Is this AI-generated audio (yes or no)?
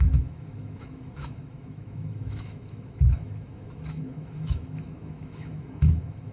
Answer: yes